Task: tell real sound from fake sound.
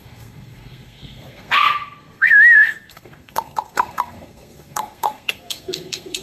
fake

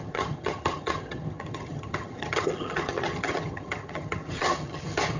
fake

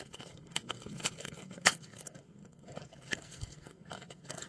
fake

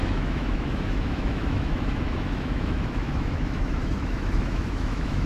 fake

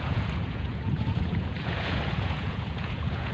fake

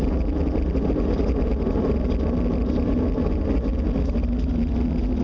real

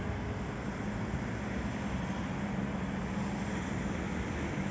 real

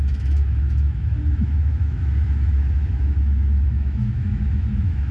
fake